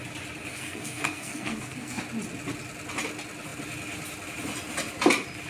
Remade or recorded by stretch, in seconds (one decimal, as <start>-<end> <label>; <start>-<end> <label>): 0.0-0.5 recorded; 0.5-2.0 remade; 2.0-5.5 recorded